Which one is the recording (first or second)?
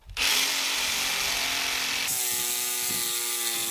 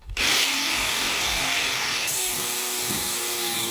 first